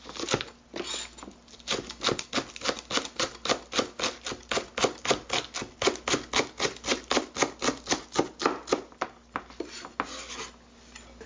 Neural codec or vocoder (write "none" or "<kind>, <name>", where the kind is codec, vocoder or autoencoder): none